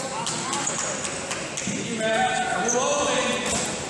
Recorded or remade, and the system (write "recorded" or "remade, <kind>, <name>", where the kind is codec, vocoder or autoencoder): recorded